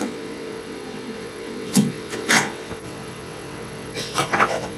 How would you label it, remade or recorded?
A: remade